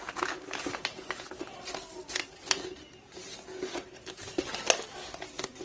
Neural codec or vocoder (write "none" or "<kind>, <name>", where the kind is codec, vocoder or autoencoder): none